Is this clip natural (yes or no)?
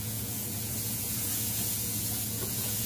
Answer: no